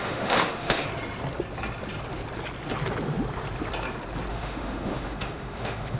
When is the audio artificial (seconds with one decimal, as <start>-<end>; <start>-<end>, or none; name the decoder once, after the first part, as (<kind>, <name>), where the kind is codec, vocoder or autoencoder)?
0.0-0.9 (autoencoder, DAC-VAE); 4.3-6.0